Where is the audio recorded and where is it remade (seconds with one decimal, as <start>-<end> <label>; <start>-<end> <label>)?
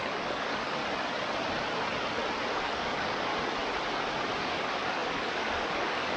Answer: 0.0-0.8 remade; 0.8-2.5 recorded; 2.5-3.3 remade; 3.3-4.4 recorded; 4.4-6.2 remade